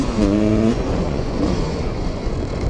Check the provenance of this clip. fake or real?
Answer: fake